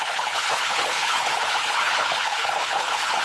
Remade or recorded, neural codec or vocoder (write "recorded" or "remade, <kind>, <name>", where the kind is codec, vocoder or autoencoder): remade, codec, HILCodec